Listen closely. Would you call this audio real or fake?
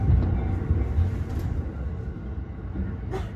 real